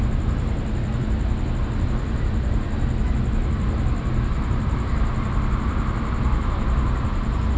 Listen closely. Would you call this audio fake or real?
real